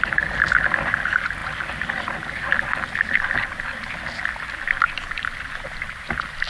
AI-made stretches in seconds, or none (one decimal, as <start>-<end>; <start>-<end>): none